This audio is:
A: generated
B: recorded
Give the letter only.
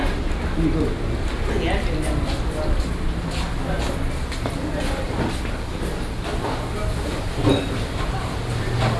B